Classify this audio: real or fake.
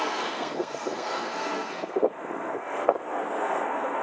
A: fake